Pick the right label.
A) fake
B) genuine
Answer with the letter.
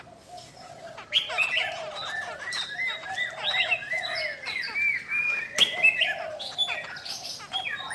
B